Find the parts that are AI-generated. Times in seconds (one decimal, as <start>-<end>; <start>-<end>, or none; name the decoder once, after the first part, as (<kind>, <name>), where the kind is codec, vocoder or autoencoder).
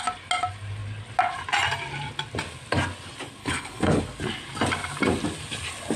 3.4-4.0 (codec, HILCodec)